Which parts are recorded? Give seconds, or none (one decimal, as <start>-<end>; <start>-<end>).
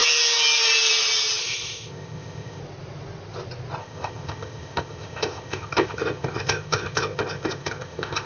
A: 0.0-1.4; 2.6-3.8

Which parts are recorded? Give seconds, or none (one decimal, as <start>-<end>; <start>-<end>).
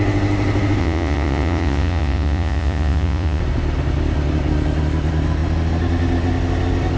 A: 0.0-0.8; 3.4-7.0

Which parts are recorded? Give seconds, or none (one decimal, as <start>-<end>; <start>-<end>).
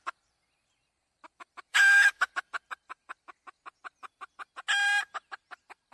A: 0.0-1.7; 2.3-5.9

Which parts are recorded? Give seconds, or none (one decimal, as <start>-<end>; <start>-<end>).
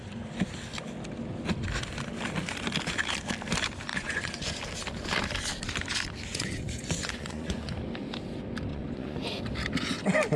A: 0.0-3.9; 4.6-6.3; 7.7-8.7; 9.4-10.4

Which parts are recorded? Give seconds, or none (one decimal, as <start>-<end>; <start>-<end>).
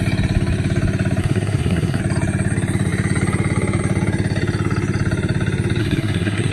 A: 0.0-1.2; 2.0-5.8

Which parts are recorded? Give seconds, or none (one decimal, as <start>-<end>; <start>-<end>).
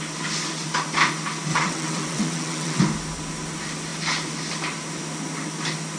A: 0.0-1.5; 2.8-6.0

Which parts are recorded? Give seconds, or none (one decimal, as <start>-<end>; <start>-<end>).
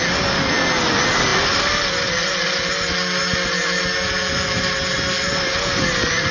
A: 0.0-6.3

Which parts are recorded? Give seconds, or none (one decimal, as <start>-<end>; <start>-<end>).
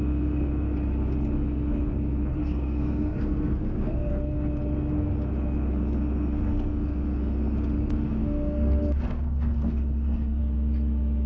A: 0.0-2.3; 4.1-8.2; 10.4-11.3